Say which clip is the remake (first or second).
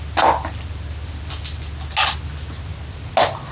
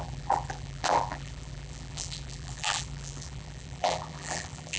second